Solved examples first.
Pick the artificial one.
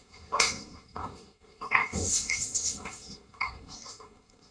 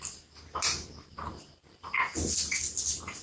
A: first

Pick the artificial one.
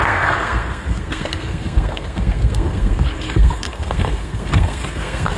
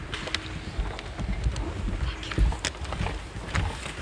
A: first